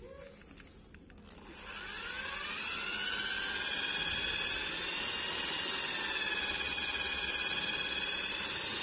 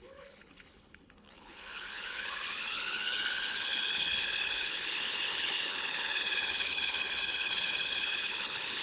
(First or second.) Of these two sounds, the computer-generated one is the second